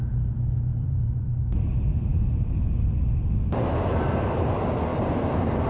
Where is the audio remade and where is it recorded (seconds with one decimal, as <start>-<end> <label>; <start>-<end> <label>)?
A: 0.0-0.7 recorded; 0.7-1.3 remade; 1.3-2.1 recorded; 2.1-2.8 remade; 2.8-4.9 recorded; 4.9-5.7 remade